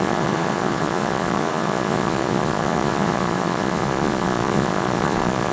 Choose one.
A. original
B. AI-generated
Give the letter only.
B